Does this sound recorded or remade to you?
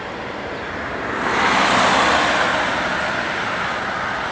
recorded